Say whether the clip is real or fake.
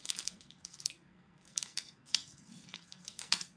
fake